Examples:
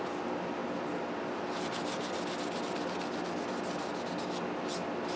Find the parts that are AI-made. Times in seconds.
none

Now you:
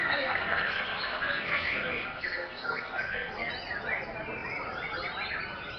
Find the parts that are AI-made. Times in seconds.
0.0-3.5 (codec, SNAC)